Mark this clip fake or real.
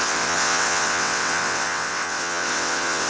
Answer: fake